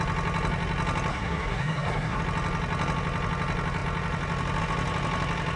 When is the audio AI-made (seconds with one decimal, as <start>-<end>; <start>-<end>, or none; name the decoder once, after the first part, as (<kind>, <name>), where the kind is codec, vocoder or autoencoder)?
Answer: 1.1-2.2 (codec, SNAC)